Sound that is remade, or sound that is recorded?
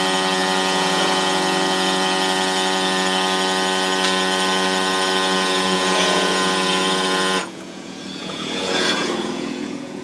remade